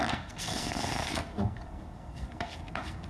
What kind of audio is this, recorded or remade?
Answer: remade